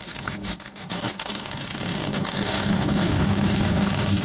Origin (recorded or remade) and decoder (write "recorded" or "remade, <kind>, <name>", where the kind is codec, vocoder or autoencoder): remade, codec, DAC